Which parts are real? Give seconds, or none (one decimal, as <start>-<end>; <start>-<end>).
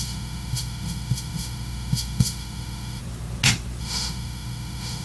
3.0-3.8